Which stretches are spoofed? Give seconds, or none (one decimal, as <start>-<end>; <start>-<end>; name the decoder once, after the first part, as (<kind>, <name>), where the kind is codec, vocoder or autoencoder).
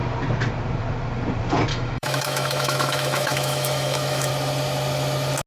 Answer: 1.7-4.3 (autoencoder, DAC-VAE)